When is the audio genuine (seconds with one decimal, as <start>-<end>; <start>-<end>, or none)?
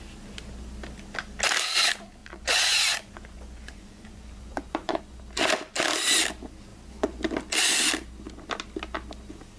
0.0-2.2; 5.2-6.7; 7.2-9.6